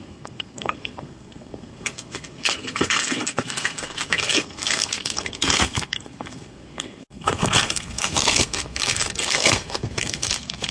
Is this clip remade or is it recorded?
remade